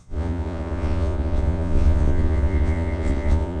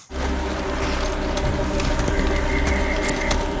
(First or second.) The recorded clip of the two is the second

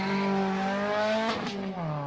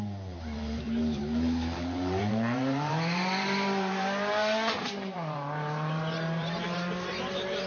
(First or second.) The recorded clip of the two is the first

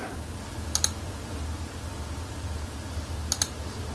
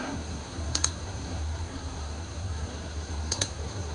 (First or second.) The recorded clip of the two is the first